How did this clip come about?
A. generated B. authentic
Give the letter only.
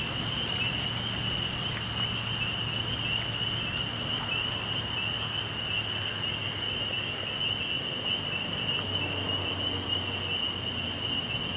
B